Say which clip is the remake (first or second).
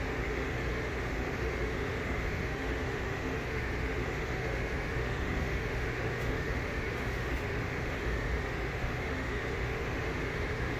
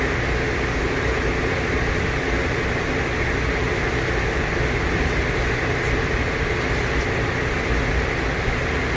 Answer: first